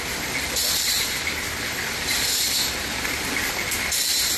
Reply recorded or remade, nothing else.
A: remade